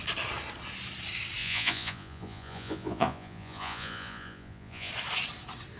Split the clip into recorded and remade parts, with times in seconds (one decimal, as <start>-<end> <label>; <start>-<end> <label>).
0.0-1.4 recorded; 1.4-4.9 remade; 4.9-5.8 recorded